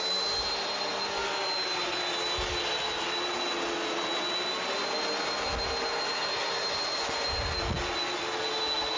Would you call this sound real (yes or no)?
yes